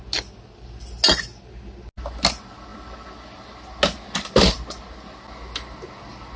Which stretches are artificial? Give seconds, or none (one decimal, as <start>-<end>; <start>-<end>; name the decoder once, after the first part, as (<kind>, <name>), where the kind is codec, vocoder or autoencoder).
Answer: none